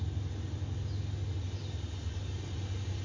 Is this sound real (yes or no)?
yes